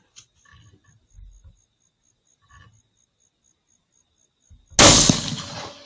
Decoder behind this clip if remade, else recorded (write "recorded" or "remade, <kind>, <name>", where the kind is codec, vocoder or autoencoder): recorded